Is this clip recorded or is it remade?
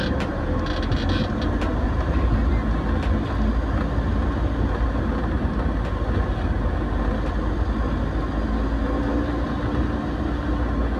recorded